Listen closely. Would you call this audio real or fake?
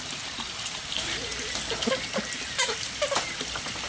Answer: real